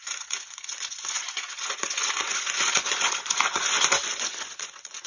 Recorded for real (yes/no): no